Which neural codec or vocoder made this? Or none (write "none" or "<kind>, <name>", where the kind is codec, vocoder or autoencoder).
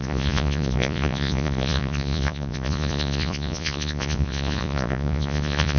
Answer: vocoder, Vocos